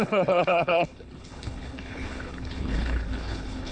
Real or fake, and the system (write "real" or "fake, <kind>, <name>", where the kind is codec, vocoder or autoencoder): fake, codec, HILCodec